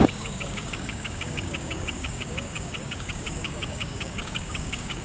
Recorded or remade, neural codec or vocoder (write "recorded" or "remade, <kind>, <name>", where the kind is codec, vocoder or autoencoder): remade, codec, DAC